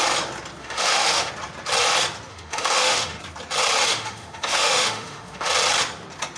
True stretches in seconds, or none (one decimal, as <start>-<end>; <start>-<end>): 0.0-0.6; 1.3-2.3; 3.2-3.8; 5.5-6.4